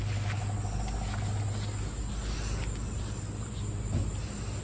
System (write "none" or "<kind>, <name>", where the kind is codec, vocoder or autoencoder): none